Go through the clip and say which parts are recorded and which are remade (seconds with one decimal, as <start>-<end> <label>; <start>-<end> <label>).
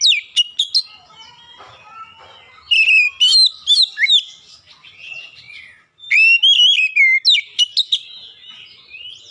0.0-9.3 recorded